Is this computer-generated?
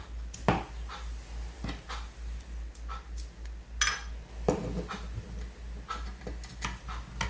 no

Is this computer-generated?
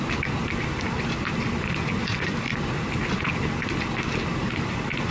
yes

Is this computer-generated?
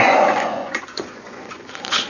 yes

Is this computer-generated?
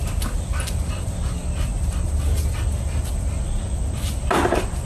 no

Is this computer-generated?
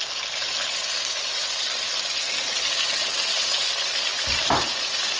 no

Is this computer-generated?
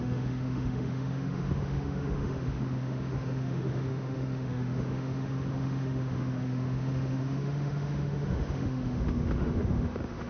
yes